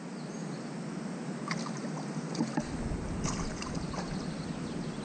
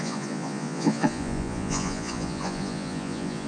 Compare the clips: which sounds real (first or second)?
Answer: first